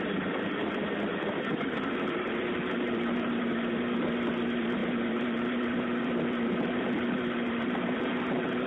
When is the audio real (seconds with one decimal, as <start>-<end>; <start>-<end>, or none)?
none